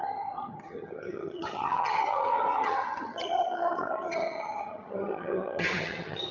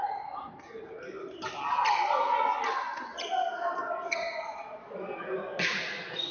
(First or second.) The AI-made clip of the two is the first